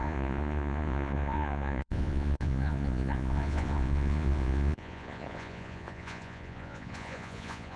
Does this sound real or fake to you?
fake